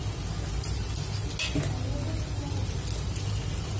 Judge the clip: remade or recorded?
recorded